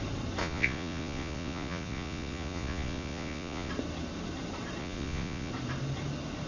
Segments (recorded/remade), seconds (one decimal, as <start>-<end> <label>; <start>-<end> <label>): 0.0-0.4 recorded; 0.4-3.7 remade; 3.7-4.8 recorded; 4.8-5.5 remade; 5.5-6.5 recorded